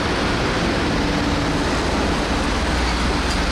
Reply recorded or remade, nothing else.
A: recorded